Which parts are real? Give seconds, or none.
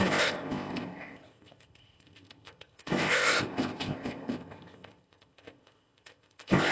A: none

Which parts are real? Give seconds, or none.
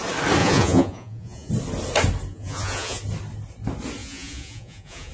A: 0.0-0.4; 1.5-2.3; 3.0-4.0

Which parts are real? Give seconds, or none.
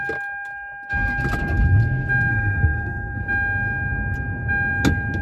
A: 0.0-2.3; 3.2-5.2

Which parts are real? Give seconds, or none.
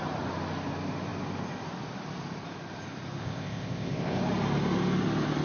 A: 0.0-3.2; 4.2-5.4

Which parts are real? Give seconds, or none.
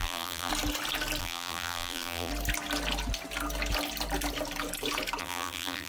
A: 0.5-1.2; 2.3-5.2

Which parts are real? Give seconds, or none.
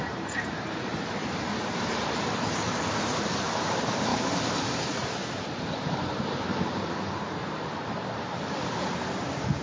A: none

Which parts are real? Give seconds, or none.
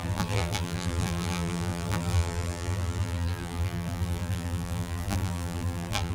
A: none